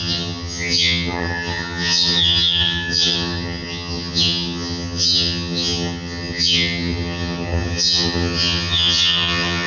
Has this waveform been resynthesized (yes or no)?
yes